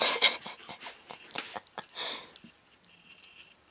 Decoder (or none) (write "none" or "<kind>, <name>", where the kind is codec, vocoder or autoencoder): none